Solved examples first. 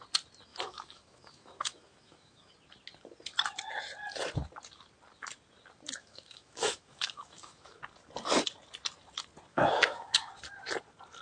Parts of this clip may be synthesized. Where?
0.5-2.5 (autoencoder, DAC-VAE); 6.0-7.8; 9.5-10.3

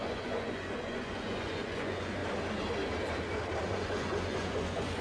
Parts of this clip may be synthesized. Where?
0.0-2.2 (vocoder, Vocos); 3.7-5.0

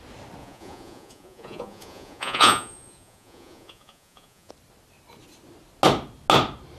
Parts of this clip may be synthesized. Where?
0.4-4.5 (vocoder, Vocos)